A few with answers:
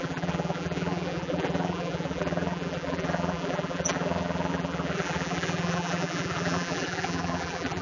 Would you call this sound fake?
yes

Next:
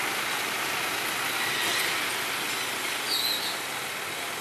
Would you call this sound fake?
no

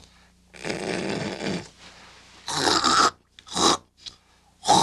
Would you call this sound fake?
no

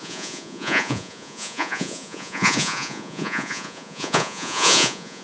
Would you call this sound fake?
yes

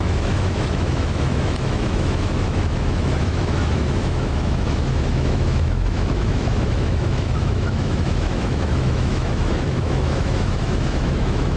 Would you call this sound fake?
yes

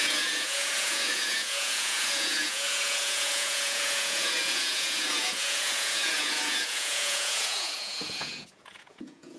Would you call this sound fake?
yes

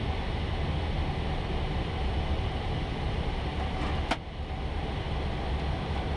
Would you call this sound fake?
no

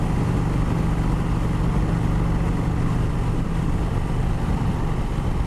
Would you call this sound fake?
no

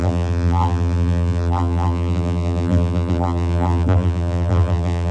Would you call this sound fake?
yes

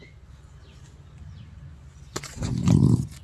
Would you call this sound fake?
yes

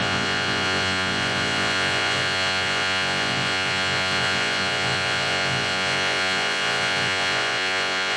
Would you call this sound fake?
yes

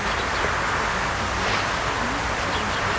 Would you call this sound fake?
no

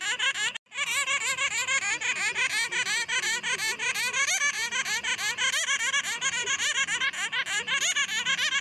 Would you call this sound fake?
no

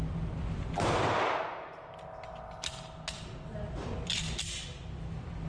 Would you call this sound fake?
no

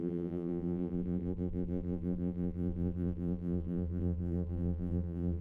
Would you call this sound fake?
yes